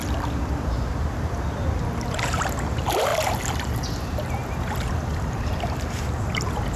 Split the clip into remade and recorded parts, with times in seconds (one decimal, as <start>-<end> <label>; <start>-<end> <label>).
0.0-6.8 remade